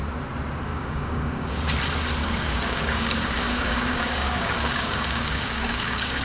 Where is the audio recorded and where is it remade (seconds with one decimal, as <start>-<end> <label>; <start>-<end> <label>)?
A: 0.0-0.7 recorded; 0.7-1.6 remade; 1.6-2.2 recorded; 2.2-6.2 remade